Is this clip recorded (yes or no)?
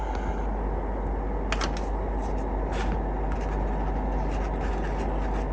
yes